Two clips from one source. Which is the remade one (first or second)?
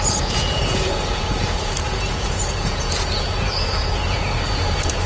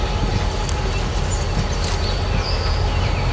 first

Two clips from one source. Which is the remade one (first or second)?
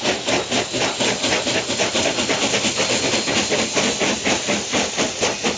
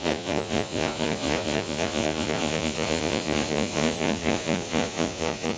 second